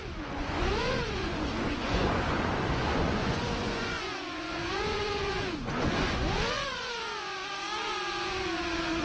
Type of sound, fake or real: fake